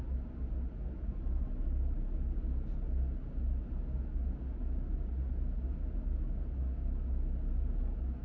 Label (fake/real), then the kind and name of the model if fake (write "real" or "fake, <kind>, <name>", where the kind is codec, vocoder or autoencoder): real